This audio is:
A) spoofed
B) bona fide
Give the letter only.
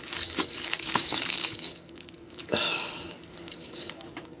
A